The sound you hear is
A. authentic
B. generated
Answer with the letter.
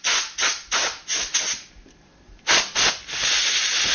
A